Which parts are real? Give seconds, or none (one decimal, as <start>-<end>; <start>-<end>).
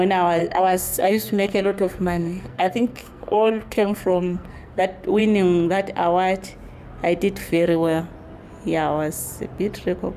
0.0-0.4; 4.8-7.4; 8.0-10.2